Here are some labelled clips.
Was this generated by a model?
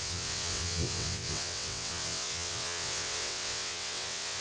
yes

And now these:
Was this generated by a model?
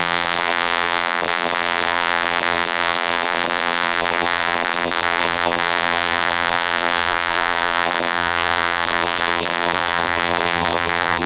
yes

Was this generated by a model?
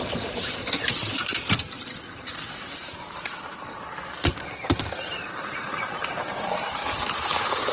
yes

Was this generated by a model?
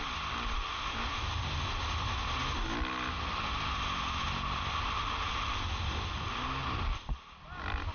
no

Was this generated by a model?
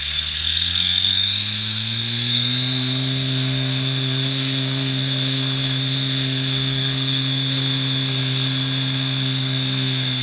yes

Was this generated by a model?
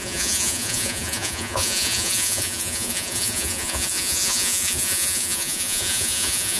yes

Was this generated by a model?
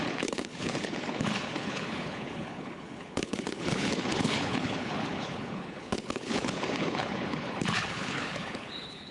yes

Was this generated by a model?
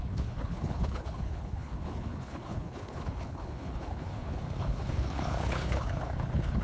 yes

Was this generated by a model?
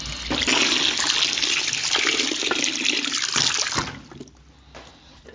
no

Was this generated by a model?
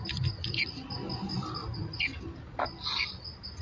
no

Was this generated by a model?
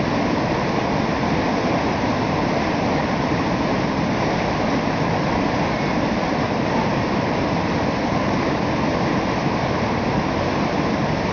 no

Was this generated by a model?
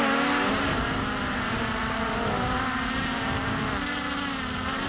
no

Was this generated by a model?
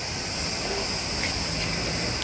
no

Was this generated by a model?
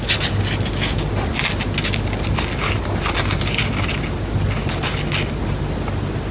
no